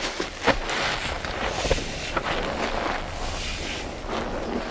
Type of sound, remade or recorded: recorded